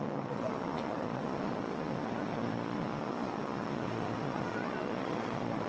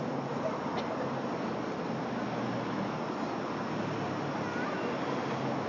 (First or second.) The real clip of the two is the second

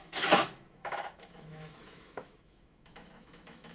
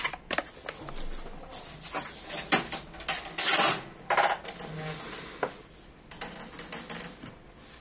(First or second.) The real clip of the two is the second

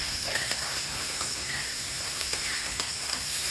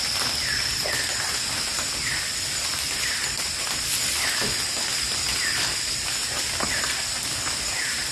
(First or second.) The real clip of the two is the second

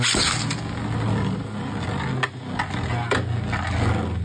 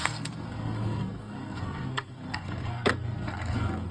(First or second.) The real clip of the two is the first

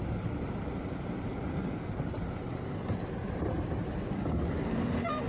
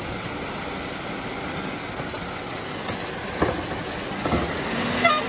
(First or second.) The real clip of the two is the second